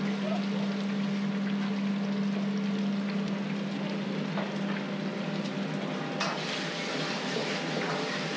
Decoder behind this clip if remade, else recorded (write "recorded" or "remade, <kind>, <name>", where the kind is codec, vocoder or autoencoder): recorded